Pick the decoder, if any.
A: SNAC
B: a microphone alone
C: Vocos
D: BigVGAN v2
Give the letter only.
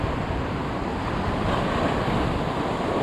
B